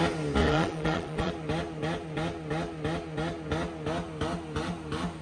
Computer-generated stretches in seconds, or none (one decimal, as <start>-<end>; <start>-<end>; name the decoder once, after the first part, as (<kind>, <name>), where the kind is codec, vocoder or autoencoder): 0.4-1.3 (vocoder, Vocos)